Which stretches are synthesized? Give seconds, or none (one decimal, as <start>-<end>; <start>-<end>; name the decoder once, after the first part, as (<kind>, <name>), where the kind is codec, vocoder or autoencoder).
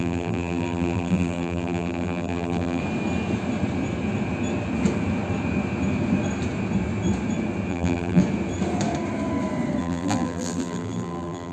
0.0-2.8 (vocoder, BigVGAN v2); 7.7-8.2; 9.8-11.5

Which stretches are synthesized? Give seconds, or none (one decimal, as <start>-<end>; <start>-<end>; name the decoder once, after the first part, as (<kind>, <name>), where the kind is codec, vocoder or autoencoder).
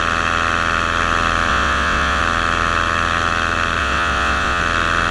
1.5-2.2 (vocoder, WaveNeXt); 3.8-4.6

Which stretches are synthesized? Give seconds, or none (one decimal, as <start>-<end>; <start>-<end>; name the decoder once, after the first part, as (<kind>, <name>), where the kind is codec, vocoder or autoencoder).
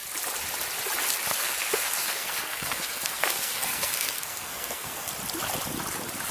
1.3-5.1 (codec, SNAC)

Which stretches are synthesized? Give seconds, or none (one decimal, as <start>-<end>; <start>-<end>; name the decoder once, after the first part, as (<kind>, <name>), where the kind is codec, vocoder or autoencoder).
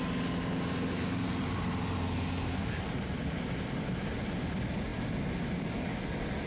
none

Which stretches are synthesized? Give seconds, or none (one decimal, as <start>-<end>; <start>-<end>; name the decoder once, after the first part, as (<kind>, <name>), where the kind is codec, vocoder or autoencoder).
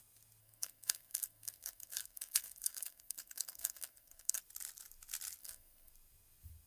0.4-4.4 (codec, SNAC); 5.4-5.9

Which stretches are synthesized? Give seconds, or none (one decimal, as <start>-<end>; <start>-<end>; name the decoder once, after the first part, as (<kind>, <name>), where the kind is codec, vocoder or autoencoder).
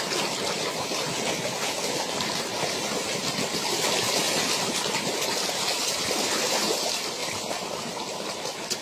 none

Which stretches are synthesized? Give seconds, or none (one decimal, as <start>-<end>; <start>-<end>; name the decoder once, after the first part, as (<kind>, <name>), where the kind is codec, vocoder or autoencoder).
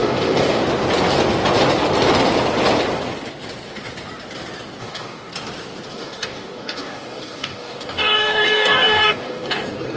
0.0-0.6 (codec, DAC); 4.8-5.3; 5.9-10.0